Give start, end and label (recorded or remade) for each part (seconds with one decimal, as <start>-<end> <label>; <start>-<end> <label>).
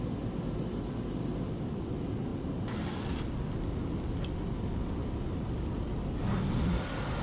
0.0-7.2 recorded